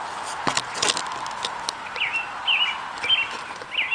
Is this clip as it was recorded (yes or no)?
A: yes